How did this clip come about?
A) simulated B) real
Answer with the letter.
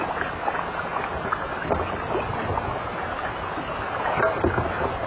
B